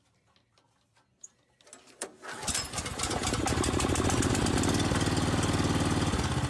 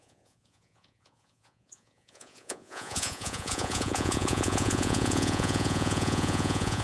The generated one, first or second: second